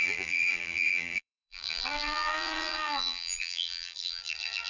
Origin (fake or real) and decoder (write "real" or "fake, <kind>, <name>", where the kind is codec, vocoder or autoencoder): fake, vocoder, BigVGAN v2